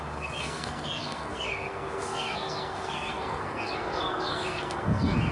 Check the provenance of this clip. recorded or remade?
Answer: remade